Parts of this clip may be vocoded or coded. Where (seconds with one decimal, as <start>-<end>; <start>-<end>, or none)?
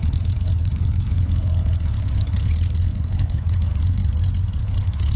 0.0-4.0; 4.6-5.2